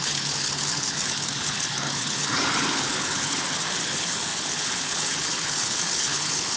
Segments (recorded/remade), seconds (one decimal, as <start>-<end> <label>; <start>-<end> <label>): 0.0-6.6 remade